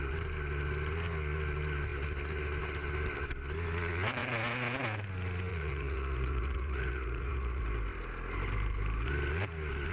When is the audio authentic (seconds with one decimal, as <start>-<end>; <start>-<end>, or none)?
0.0-5.5; 7.6-9.9